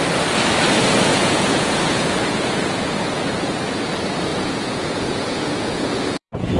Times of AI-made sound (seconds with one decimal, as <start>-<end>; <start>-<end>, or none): 1.1-3.8; 4.3-6.6